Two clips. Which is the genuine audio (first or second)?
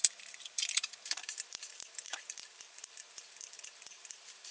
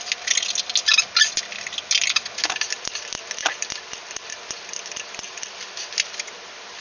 second